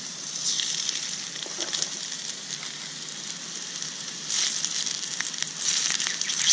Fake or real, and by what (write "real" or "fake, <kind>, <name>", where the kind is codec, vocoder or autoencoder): real